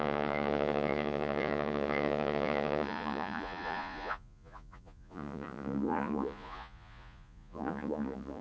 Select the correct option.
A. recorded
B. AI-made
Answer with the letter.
B